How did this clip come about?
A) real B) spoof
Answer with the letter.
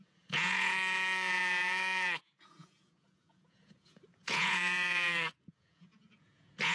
B